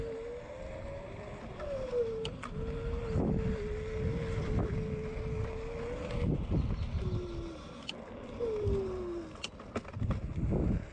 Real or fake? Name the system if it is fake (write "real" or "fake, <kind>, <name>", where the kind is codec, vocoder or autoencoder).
real